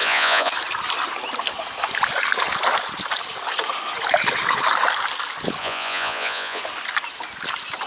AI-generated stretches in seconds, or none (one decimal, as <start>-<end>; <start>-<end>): 0.0-0.5; 5.6-6.6